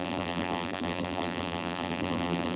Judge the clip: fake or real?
fake